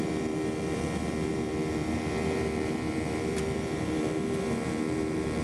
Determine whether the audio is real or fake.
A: fake